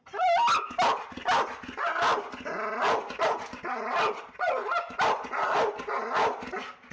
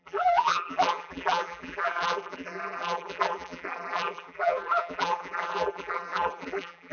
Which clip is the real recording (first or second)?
first